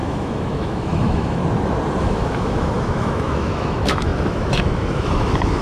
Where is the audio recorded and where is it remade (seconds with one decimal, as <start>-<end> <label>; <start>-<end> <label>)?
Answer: 0.0-1.4 remade; 1.4-2.0 recorded; 2.0-5.6 remade